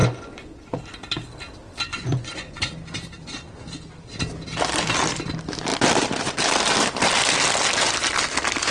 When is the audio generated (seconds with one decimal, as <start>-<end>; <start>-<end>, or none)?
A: 0.0-0.8; 1.9-2.7